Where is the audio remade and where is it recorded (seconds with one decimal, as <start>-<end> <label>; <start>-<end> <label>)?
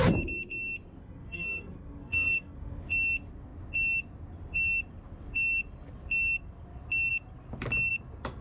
0.0-1.0 recorded; 1.0-2.8 remade; 2.8-8.4 recorded